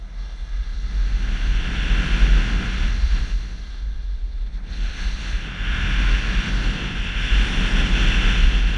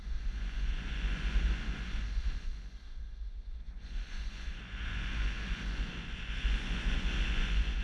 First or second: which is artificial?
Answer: second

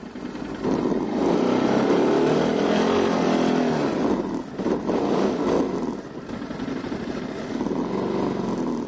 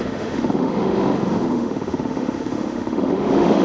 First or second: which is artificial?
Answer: second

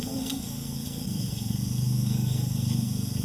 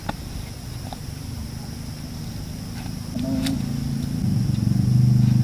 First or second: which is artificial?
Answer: first